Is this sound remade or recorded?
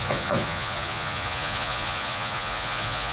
remade